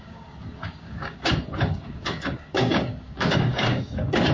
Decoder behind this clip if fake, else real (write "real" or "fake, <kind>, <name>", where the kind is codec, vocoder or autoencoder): fake, codec, DAC